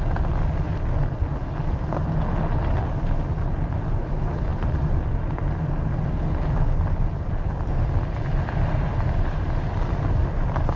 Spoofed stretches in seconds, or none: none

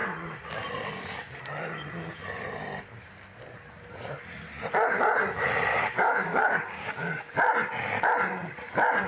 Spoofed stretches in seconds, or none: 5.7-7.1

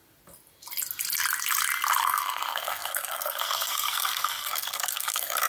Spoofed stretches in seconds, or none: 2.0-5.5

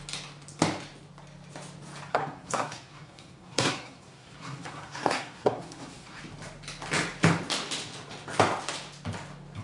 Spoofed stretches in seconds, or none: 2.1-6.2

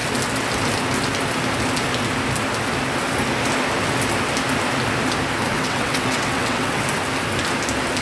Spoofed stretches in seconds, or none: 5.5-6.8